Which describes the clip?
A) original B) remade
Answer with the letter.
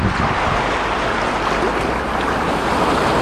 A